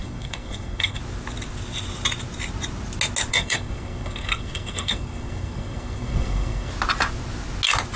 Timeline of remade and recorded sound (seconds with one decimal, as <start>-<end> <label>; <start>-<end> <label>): 0.0-1.0 remade; 1.0-3.3 recorded; 3.3-6.7 remade; 6.7-8.0 recorded